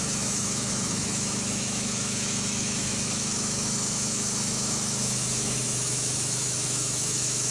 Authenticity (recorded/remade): remade